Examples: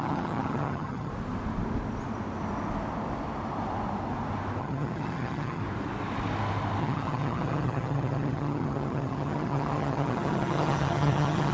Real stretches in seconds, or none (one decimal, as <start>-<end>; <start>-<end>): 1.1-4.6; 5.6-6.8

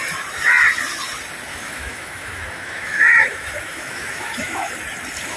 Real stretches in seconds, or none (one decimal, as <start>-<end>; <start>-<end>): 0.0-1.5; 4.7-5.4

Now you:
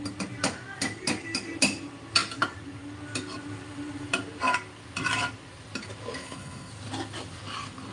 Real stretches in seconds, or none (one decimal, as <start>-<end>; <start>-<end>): 0.0-6.2; 6.7-7.9

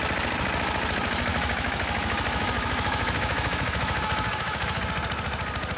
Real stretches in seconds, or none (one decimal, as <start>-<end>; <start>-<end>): 0.0-1.3; 4.8-5.8